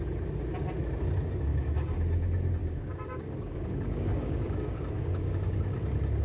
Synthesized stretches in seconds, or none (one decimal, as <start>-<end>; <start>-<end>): 1.5-2.0; 2.6-5.6